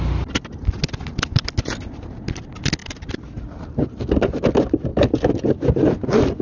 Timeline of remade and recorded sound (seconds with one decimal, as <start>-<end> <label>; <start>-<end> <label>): 0.0-6.4 recorded

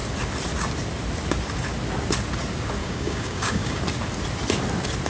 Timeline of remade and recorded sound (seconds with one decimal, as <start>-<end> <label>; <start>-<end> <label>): 0.0-2.8 recorded; 2.8-3.8 remade; 3.8-5.1 recorded

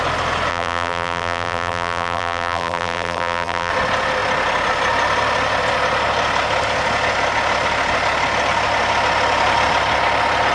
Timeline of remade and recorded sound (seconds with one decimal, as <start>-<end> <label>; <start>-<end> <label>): 0.0-0.5 recorded; 0.5-3.7 remade; 3.7-10.5 recorded

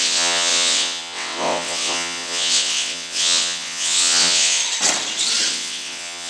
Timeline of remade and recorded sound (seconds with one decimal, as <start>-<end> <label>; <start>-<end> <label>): 0.0-4.6 remade; 4.6-5.5 recorded; 5.5-6.3 remade